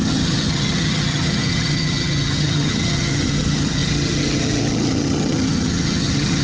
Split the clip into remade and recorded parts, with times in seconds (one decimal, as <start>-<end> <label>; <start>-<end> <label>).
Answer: 0.0-6.4 remade